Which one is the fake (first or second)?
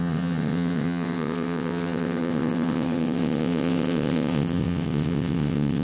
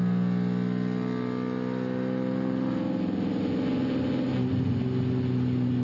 first